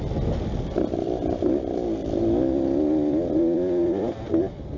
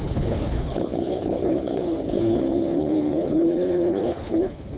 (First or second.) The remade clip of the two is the second